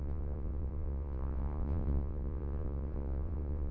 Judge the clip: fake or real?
fake